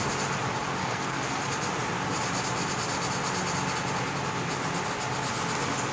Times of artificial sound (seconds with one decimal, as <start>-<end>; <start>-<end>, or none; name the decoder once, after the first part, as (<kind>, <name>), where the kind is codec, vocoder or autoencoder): 0.8-1.4 (codec, SNAC)